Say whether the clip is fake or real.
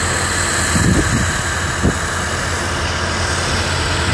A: real